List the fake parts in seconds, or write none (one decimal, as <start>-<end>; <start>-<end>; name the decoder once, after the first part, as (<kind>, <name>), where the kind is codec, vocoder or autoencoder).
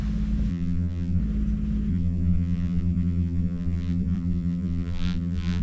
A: 0.5-1.2 (vocoder, BigVGAN v2); 1.9-5.6